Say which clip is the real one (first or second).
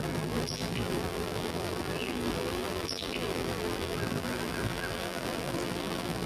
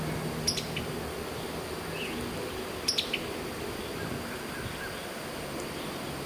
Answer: second